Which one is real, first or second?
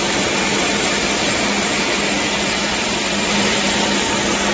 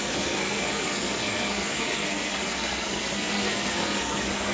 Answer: first